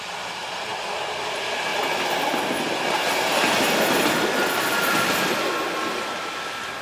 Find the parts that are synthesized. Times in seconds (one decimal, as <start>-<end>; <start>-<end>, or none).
none